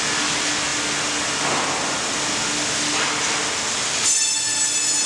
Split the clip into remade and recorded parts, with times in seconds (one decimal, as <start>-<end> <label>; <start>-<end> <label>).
0.0-5.1 recorded